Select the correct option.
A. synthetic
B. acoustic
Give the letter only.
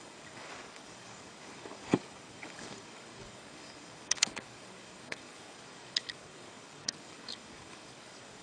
A